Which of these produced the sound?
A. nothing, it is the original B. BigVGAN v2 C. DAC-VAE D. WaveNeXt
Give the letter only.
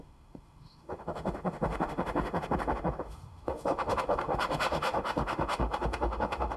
C